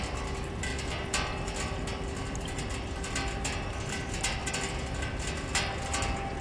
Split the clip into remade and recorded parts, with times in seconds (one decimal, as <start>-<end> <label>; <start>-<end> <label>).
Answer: 0.0-6.4 recorded